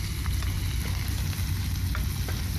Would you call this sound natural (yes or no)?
yes